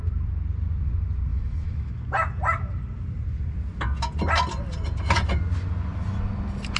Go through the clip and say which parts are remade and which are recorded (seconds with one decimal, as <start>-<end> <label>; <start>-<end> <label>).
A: 0.0-1.3 recorded; 1.3-1.9 remade; 1.9-6.8 recorded

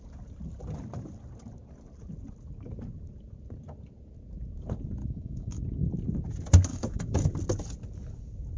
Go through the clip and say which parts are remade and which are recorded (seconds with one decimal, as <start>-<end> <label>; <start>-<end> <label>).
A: 0.0-5.0 recorded; 5.0-5.6 remade; 5.6-6.7 recorded; 6.7-7.3 remade; 7.3-8.6 recorded

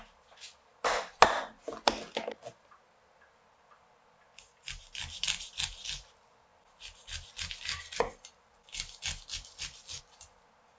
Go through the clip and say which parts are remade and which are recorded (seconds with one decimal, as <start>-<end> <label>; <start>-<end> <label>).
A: 0.0-10.8 recorded